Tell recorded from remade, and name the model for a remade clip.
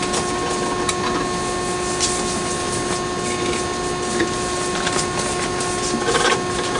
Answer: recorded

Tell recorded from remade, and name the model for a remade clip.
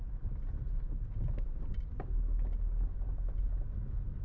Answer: recorded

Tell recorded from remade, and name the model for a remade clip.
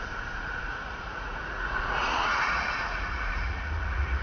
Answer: remade, vocoder, Vocos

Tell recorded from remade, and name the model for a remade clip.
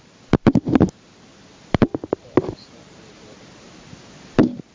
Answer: recorded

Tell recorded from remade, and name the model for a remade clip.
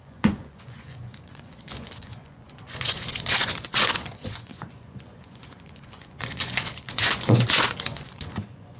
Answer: remade, vocoder, Vocos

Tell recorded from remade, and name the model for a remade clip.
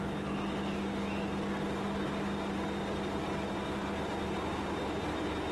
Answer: recorded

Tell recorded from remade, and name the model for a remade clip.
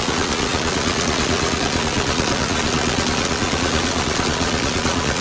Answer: remade, vocoder, Vocos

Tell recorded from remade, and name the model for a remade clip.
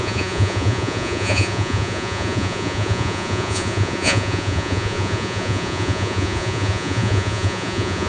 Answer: remade, vocoder, Vocos